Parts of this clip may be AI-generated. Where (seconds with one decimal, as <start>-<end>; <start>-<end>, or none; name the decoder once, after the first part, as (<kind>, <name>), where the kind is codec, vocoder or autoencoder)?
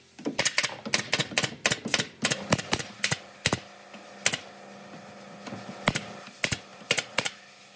6.7-7.3 (vocoder, BigVGAN v2)